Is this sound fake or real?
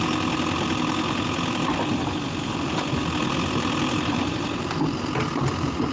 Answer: real